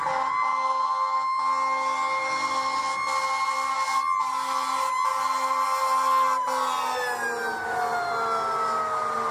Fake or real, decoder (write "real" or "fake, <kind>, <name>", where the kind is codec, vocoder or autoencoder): real